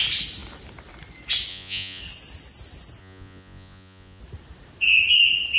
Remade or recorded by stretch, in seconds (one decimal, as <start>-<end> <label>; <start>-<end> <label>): 0.0-1.5 recorded; 1.5-2.0 remade; 2.0-3.0 recorded; 3.0-4.2 remade; 4.2-5.6 recorded